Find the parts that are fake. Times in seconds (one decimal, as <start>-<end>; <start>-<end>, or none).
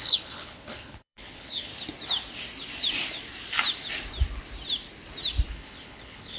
0.0-1.7; 5.5-6.4